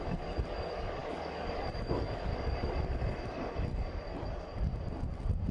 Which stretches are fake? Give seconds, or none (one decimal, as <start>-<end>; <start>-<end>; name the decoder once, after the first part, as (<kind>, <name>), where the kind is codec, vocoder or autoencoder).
0.0-4.7 (codec, DAC)